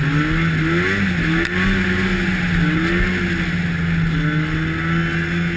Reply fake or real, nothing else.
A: real